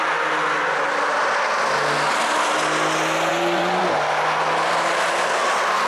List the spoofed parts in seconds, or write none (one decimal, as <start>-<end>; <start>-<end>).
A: 3.3-3.8